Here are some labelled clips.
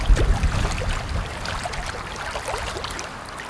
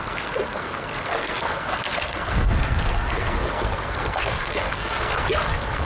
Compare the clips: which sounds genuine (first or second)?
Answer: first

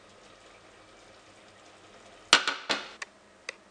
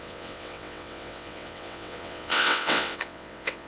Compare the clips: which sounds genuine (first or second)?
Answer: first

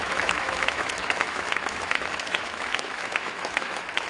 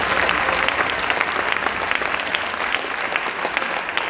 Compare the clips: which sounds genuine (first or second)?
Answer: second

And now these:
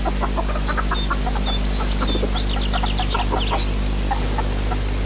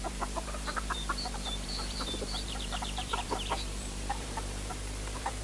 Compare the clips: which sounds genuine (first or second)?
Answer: first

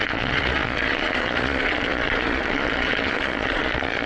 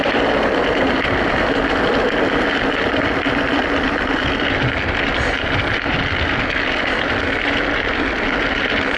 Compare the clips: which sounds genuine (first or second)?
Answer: second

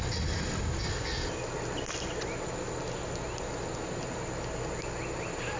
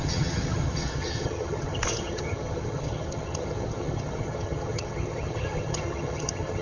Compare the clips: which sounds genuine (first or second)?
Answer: first